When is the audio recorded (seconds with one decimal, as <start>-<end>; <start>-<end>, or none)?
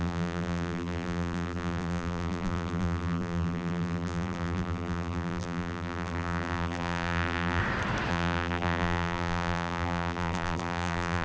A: 7.6-8.1